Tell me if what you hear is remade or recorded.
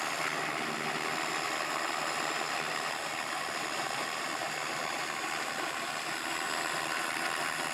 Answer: recorded